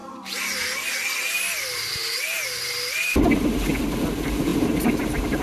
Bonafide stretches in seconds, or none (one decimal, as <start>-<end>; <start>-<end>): 0.0-5.4